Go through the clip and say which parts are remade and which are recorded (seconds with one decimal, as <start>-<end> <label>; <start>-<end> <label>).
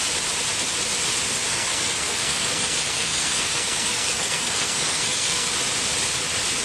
0.0-1.5 recorded; 1.5-5.5 remade; 5.5-6.6 recorded